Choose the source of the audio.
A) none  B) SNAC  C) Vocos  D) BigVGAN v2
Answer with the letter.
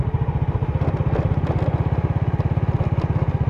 A